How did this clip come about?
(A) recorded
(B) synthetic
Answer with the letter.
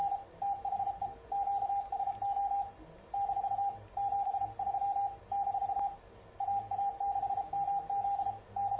A